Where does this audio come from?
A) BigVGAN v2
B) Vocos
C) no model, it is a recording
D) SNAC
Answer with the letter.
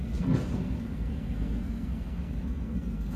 D